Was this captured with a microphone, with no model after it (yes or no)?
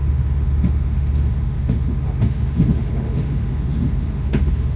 no